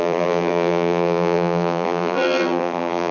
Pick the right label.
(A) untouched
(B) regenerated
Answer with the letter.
B